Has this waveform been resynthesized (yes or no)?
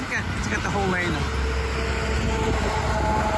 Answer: no